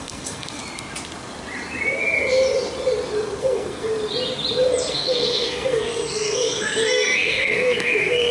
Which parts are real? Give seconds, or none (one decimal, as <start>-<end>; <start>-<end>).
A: 0.6-3.4; 3.9-4.9